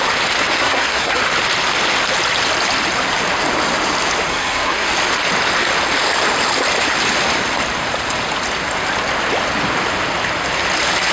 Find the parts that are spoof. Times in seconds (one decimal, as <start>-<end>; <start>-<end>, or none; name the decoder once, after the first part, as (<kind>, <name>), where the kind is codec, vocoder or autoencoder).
0.6-1.2 (codec, SNAC); 4.3-4.9